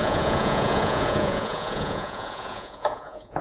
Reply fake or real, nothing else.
fake